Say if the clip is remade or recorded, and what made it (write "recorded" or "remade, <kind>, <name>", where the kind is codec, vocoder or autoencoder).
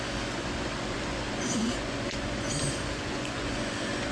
remade, vocoder, Vocos